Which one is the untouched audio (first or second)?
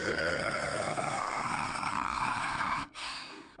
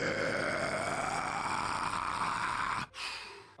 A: second